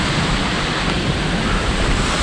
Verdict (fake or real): fake